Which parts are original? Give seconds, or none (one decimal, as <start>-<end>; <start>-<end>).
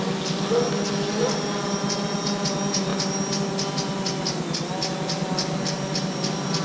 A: 0.0-6.6